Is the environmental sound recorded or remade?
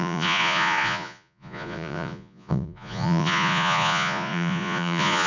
remade